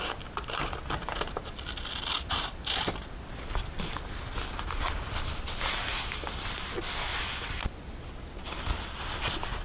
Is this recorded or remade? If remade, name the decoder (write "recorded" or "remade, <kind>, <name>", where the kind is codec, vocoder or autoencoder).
recorded